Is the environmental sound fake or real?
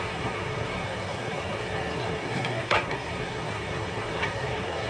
fake